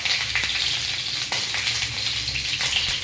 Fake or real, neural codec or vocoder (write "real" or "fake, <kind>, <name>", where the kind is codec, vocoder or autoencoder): real